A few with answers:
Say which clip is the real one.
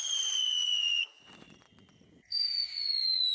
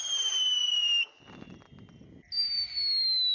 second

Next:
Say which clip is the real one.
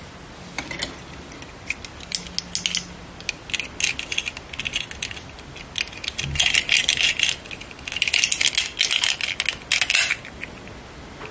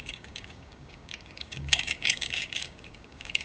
first